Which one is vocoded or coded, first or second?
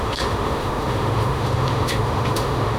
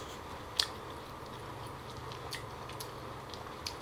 first